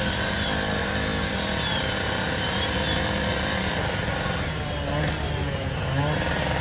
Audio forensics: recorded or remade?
recorded